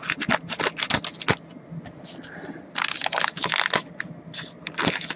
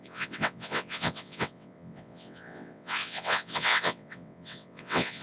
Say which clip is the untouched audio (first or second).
first